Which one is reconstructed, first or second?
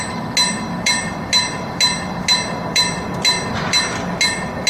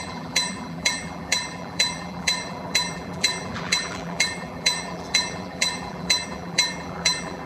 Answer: second